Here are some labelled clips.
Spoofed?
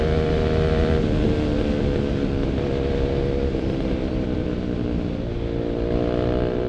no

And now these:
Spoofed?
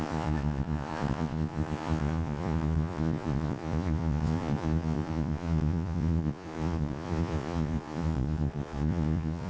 yes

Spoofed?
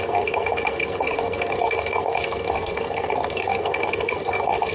yes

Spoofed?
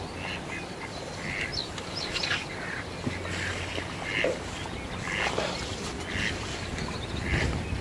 no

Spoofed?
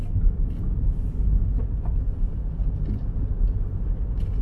no